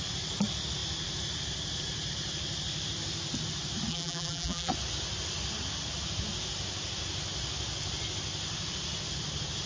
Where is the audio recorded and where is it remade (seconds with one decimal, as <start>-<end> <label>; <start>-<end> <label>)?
0.0-3.9 recorded; 3.9-4.7 remade; 4.7-9.7 recorded